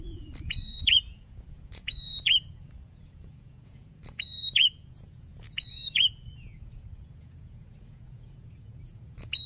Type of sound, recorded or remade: remade